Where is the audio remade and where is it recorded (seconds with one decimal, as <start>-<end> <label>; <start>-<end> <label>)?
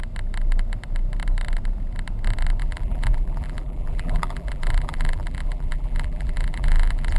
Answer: 0.0-2.6 recorded; 2.6-7.2 remade